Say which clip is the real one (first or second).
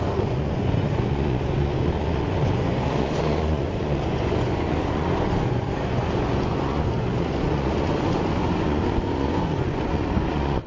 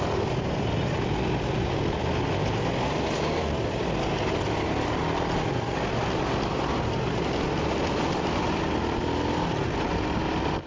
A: second